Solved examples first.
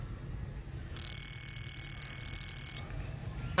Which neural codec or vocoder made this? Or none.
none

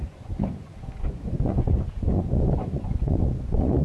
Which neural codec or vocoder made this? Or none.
vocoder, Vocos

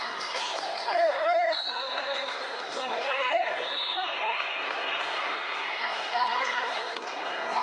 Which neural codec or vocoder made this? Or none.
codec, SNAC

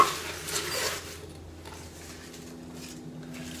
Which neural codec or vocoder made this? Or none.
none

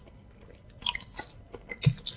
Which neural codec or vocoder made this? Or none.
none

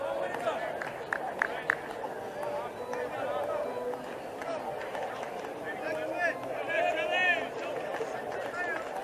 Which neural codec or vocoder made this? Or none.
none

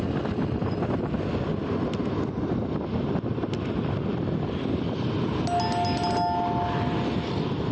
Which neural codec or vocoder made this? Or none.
none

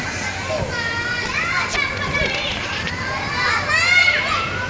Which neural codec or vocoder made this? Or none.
none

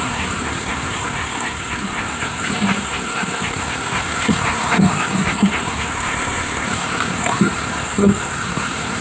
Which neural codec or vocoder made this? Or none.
codec, SNAC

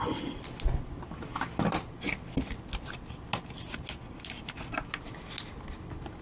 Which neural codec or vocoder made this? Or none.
none